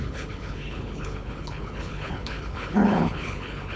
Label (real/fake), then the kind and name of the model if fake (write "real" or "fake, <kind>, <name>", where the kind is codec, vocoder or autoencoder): fake, codec, HILCodec